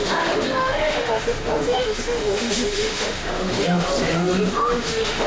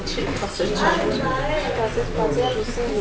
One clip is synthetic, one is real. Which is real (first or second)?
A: second